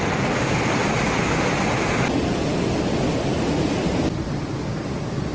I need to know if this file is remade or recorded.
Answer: recorded